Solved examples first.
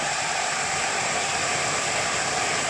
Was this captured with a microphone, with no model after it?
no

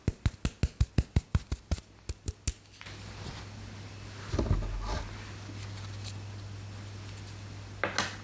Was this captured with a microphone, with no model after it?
yes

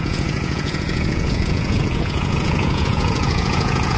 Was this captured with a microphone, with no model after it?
no